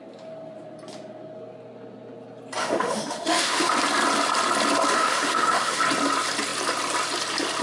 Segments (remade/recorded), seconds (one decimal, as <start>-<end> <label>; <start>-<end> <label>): 0.0-2.6 recorded; 2.6-3.7 remade; 3.7-4.9 recorded; 4.9-5.8 remade; 5.8-7.6 recorded